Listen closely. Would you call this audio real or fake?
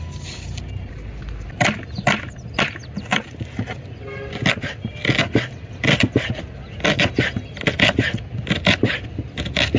real